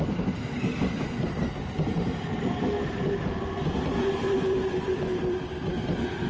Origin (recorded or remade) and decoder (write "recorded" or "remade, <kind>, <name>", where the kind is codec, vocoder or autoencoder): remade, vocoder, BigVGAN v2